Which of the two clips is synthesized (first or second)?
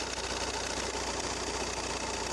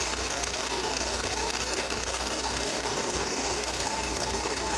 second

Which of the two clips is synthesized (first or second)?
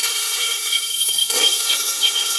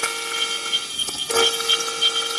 first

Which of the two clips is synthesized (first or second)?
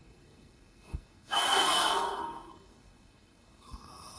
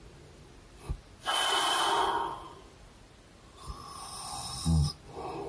first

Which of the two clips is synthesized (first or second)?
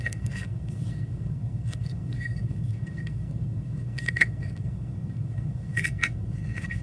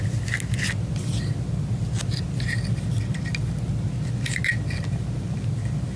first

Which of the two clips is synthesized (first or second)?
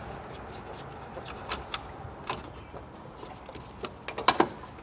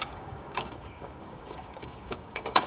second